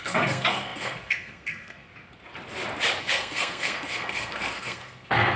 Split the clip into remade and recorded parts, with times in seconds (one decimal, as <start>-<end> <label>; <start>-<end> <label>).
0.0-1.9 remade; 1.9-3.0 recorded; 3.0-5.4 remade